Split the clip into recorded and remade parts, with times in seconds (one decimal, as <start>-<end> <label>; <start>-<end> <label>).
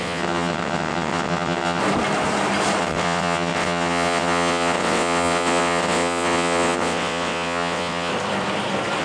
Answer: 0.0-1.8 remade; 1.8-2.8 recorded; 2.8-8.1 remade; 8.1-9.0 recorded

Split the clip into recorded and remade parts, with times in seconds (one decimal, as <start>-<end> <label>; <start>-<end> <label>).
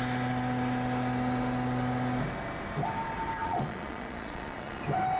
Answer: 0.0-3.4 recorded; 3.4-4.8 remade; 4.8-5.2 recorded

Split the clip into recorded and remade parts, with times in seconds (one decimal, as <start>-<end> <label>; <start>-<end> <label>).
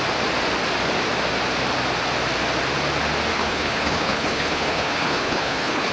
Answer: 0.0-3.3 recorded; 3.3-5.9 remade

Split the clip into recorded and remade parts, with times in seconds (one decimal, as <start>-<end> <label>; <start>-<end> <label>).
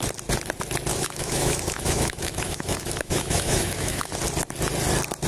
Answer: 0.0-0.9 recorded; 0.9-4.1 remade; 4.1-5.3 recorded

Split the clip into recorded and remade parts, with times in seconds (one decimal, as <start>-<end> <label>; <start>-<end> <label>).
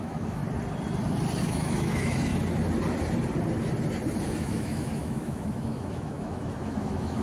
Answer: 0.0-0.4 remade; 0.4-1.4 recorded; 1.4-2.3 remade; 2.3-4.4 recorded; 4.4-7.2 remade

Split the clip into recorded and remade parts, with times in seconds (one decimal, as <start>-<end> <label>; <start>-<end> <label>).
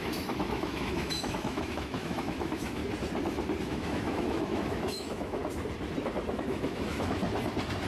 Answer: 0.0-2.8 remade; 2.8-3.6 recorded; 3.6-5.4 remade; 5.4-6.3 recorded; 6.3-7.2 remade; 7.2-7.9 recorded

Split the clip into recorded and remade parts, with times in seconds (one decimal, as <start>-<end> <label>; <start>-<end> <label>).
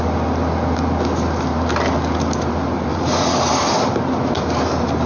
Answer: 0.0-2.9 recorded; 2.9-3.5 remade; 3.5-5.1 recorded